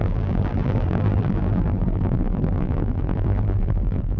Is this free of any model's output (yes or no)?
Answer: no